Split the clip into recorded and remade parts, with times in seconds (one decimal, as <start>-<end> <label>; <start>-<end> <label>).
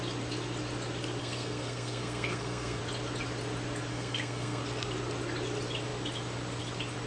0.0-1.2 recorded; 1.2-2.8 remade; 2.8-3.9 recorded; 3.9-4.6 remade; 4.6-7.1 recorded